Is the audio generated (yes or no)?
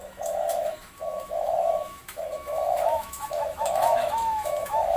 yes